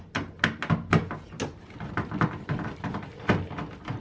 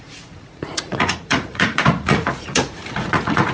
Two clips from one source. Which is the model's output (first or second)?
second